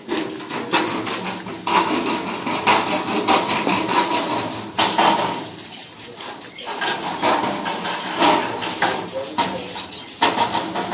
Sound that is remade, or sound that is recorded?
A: recorded